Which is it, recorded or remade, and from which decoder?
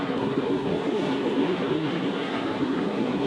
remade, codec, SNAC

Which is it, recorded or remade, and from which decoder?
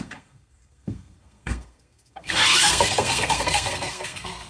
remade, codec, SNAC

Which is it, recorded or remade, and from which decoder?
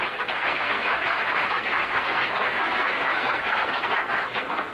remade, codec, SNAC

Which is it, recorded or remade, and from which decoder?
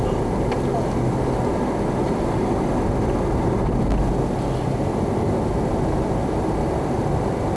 recorded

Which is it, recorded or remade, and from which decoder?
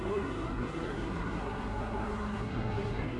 remade, codec, SNAC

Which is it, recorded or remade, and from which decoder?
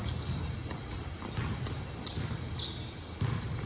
recorded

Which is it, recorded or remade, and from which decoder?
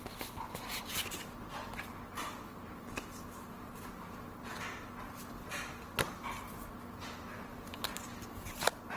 recorded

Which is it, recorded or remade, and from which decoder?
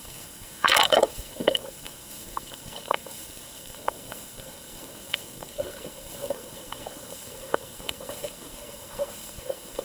remade, codec, SNAC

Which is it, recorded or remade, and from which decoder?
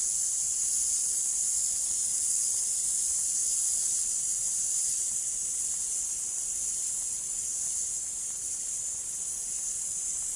recorded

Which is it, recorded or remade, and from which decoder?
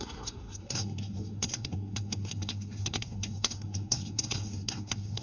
remade, codec, SNAC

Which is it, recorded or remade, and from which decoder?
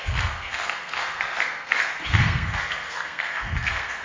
remade, codec, SNAC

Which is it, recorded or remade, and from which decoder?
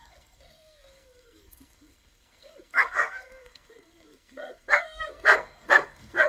remade, codec, SNAC